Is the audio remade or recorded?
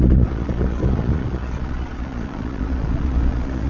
remade